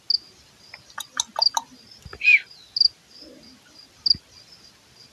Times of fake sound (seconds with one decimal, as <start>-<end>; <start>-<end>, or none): none